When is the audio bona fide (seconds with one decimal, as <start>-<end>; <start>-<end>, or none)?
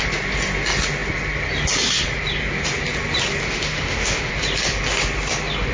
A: 0.0-3.4; 4.3-5.7